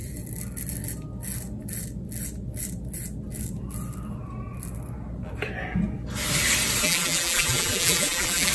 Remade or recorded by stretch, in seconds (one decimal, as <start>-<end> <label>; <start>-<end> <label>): 0.0-6.8 recorded; 6.8-8.5 remade